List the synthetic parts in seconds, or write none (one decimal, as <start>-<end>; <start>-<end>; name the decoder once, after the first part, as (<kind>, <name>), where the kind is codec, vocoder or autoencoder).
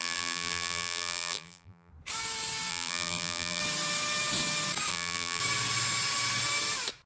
0.0-1.9 (vocoder, BigVGAN v2); 2.7-3.6; 4.9-5.4